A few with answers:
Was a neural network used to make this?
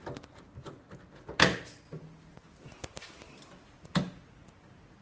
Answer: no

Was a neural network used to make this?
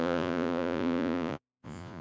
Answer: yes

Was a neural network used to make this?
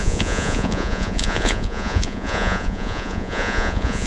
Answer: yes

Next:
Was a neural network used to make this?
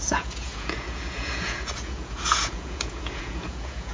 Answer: yes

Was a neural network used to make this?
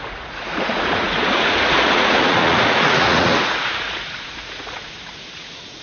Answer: yes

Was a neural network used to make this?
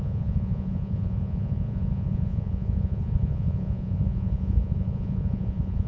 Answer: yes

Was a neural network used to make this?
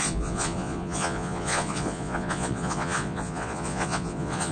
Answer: yes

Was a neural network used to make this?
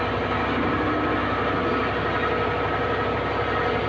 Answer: no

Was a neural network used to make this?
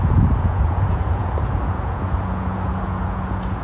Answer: yes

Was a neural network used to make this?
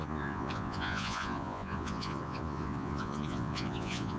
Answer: yes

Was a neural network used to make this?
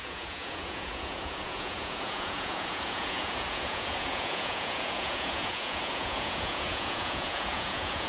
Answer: yes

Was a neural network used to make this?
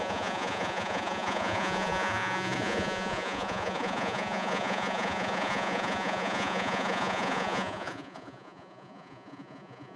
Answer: yes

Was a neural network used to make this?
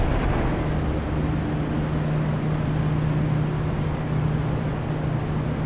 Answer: no